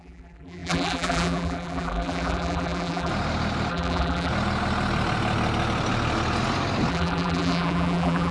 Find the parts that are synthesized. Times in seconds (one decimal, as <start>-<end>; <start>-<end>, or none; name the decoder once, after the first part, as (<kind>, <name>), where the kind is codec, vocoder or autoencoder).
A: 0.0-3.1 (vocoder, BigVGAN v2); 3.7-4.3; 6.9-8.3